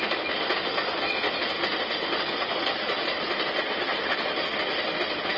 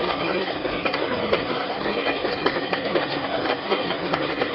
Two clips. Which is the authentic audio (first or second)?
first